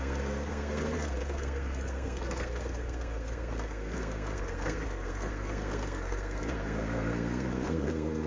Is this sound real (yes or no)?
no